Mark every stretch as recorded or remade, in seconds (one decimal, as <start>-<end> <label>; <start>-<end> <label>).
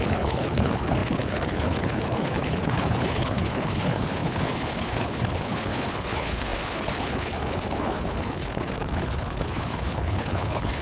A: 0.0-10.8 remade